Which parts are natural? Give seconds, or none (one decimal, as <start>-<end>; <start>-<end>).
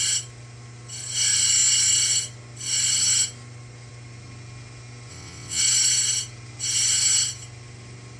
0.0-5.1; 5.6-8.2